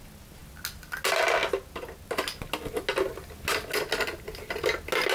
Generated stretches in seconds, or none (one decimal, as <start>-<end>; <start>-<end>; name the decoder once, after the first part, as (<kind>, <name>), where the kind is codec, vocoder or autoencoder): none